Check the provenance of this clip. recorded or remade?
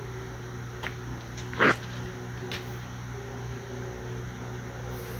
recorded